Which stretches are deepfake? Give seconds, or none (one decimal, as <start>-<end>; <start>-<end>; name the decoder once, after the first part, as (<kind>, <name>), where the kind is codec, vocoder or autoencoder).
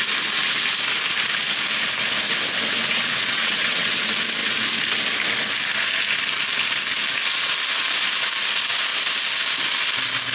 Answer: 2.7-4.0 (vocoder, WaveNeXt)